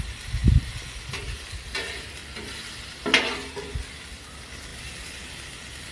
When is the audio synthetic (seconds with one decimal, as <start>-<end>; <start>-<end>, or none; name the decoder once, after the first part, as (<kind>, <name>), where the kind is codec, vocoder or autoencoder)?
none